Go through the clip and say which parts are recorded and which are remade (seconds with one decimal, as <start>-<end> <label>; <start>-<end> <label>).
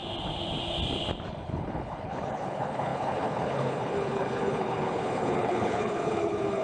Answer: 0.0-1.3 recorded; 1.3-6.6 remade